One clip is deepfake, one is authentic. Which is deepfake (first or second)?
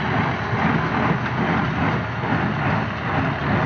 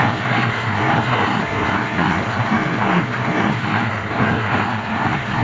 second